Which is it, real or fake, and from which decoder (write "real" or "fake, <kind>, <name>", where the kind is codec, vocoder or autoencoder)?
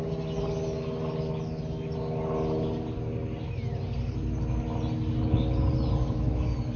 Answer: real